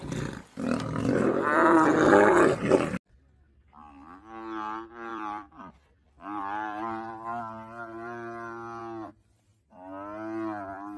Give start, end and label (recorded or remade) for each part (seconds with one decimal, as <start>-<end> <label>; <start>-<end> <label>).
0.0-5.1 recorded; 5.1-8.8 remade; 8.8-11.0 recorded